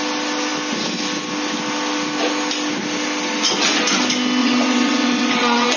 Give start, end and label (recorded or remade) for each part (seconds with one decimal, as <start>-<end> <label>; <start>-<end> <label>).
0.0-4.4 recorded; 4.4-5.8 remade